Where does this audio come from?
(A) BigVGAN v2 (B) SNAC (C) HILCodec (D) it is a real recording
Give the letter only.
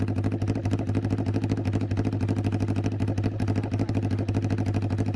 D